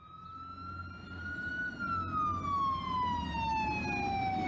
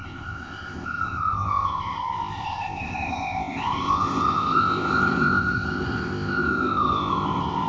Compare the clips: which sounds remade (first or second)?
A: second